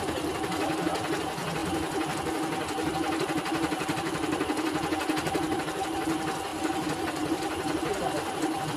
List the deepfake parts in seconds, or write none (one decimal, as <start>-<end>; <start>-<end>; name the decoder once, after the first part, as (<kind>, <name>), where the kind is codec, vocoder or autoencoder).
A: 6.5-8.0 (vocoder, BigVGAN v2)